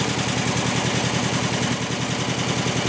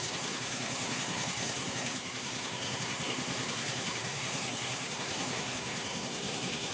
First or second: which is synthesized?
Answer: second